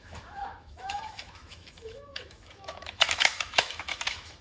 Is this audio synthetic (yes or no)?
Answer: yes